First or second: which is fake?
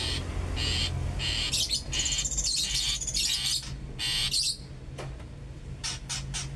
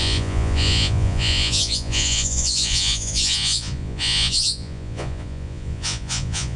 second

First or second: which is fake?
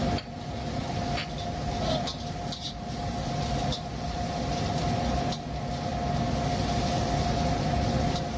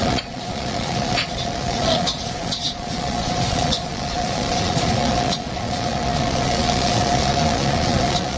second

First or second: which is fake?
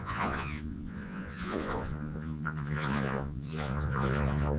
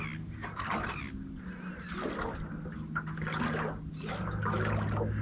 first